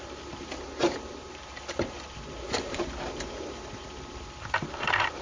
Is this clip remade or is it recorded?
remade